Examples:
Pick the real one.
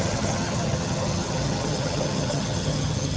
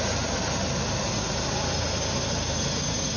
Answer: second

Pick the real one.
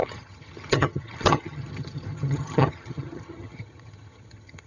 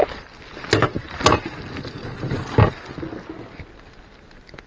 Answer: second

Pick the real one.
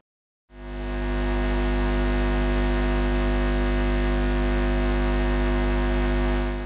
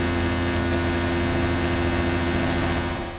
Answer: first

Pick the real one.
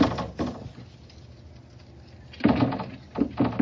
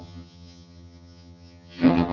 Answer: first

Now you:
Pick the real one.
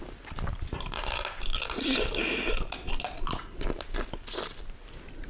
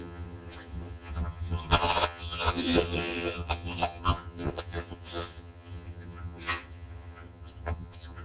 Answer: first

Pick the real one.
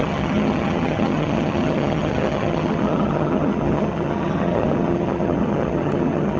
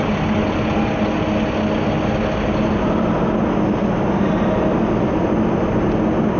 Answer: second